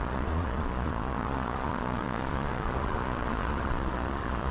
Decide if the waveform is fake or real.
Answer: fake